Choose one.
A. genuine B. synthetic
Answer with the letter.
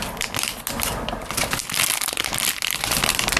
A